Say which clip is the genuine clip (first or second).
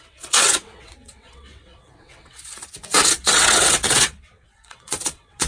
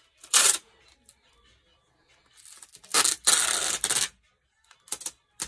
second